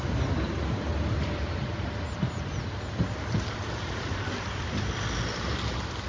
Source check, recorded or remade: recorded